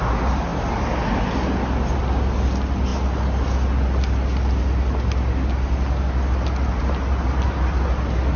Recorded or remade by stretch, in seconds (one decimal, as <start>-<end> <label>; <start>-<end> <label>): 0.0-8.4 recorded